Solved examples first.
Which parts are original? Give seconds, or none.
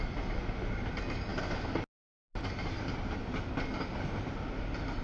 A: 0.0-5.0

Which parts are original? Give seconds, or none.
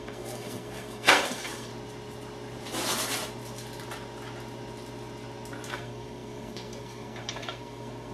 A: 1.7-5.7